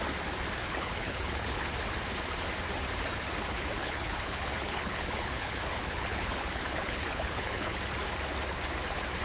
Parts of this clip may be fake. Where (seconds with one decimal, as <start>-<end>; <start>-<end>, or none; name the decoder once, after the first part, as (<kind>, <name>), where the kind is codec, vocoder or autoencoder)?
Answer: 0.6-1.7 (codec, HILCodec); 3.8-7.8

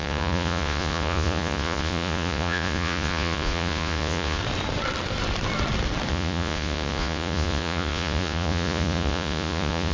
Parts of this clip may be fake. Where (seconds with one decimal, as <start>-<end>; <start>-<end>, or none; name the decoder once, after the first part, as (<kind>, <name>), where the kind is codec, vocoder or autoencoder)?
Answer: 0.0-4.4 (vocoder, Vocos); 6.1-9.9

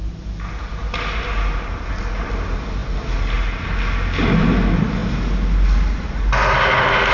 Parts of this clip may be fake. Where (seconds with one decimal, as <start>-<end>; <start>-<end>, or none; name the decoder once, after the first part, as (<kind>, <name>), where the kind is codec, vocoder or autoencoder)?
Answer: none

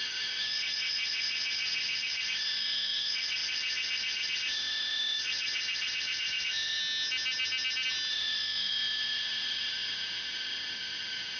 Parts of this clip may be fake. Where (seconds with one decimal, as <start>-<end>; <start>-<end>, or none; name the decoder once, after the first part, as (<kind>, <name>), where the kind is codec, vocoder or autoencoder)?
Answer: 0.0-6.8 (autoencoder, DAC-VAE); 8.1-11.4

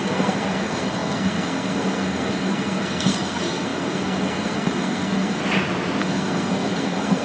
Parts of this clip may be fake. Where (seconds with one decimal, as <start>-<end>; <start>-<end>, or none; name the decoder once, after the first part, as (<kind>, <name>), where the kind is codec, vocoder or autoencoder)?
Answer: 0.0-5.4 (codec, SNAC); 6.0-7.2

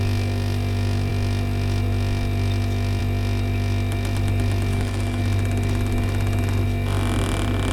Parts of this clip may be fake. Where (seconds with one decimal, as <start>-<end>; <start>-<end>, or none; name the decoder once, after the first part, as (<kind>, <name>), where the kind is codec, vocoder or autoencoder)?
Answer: 4.7-5.2 (codec, DAC)

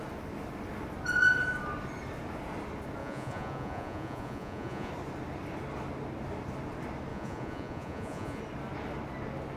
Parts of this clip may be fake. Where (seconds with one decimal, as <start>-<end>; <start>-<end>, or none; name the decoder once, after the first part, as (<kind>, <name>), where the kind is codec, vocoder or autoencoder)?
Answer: 3.0-4.9 (vocoder, Vocos); 7.1-8.4